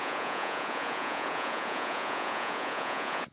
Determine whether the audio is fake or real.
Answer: fake